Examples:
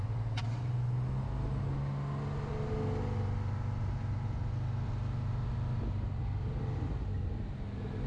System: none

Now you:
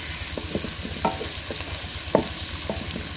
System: none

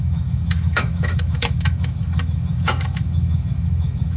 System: autoencoder, DAC-VAE